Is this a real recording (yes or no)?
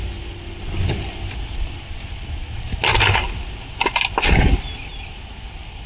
yes